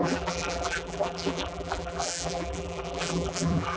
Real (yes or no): no